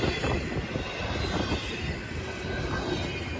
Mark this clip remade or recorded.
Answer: recorded